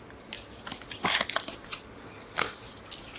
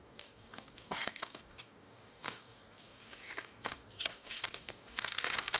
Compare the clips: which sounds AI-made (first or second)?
second